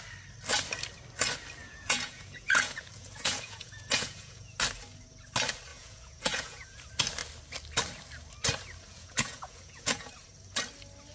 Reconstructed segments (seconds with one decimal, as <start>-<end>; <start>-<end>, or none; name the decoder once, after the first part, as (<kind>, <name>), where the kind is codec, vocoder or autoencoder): 1.6-4.6 (vocoder, Vocos); 5.7-6.8; 8.9-10.1